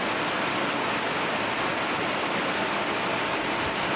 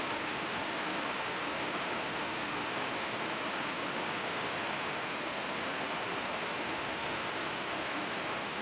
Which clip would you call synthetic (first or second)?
second